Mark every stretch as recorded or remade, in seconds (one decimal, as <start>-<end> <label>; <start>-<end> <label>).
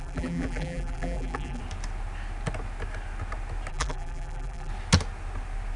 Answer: 0.0-1.6 remade; 1.6-3.7 recorded; 3.7-4.7 remade; 4.7-5.8 recorded